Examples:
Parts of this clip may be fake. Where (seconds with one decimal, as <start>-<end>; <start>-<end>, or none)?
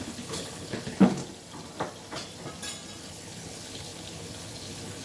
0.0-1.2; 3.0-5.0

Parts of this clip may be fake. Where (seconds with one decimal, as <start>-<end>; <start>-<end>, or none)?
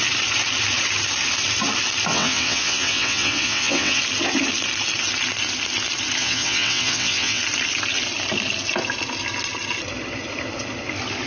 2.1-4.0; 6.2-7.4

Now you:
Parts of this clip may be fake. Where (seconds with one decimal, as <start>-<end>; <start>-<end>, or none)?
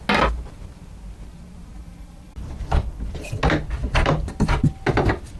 1.8-3.0